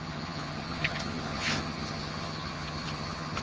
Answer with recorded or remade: remade